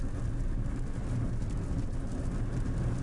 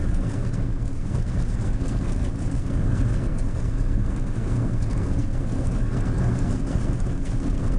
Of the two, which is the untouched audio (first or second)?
first